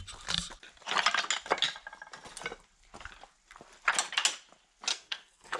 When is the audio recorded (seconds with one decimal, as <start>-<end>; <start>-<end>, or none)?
0.0-4.9